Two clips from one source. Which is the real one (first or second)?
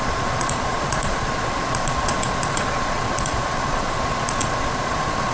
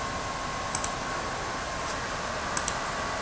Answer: second